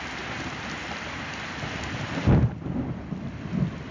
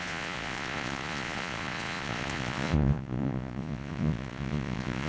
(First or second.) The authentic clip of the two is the first